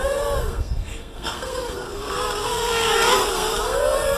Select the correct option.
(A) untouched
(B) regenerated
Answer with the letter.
B